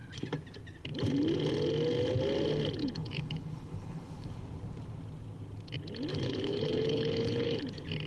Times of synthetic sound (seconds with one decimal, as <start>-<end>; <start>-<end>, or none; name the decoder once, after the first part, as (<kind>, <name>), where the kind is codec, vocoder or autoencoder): 2.8-4.4 (codec, HILCodec); 6.1-7.6